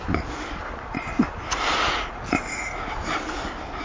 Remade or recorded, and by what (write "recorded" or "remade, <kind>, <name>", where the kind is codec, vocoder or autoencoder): recorded